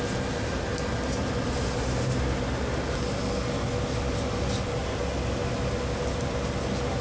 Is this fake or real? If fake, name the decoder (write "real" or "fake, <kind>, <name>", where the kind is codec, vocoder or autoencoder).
real